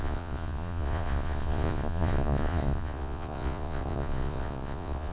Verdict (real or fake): fake